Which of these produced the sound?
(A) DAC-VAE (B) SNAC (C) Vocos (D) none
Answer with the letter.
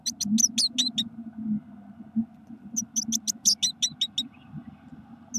D